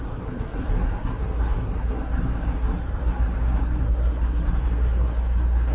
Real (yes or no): no